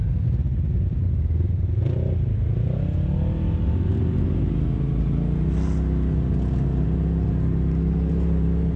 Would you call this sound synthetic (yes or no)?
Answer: no